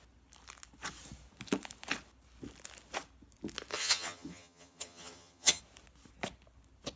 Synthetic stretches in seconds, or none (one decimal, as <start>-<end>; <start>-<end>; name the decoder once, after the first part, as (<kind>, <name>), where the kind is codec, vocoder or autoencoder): 3.7-5.6 (vocoder, HiFi-GAN)